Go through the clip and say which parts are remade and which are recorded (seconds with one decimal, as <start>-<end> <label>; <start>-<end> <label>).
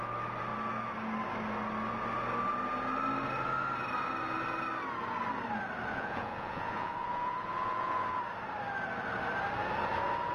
0.0-5.9 recorded; 5.9-8.2 remade; 8.2-10.3 recorded